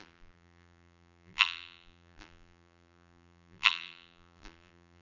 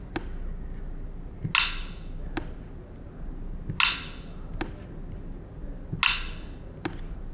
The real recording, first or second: second